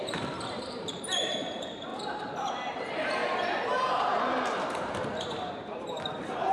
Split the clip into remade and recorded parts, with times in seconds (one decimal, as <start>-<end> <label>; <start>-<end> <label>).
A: 0.0-3.2 remade; 3.2-3.8 recorded; 3.8-6.5 remade